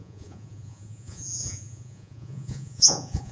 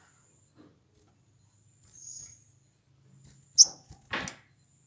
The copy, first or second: first